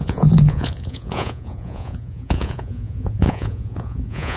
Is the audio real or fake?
fake